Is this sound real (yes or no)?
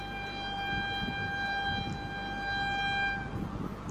yes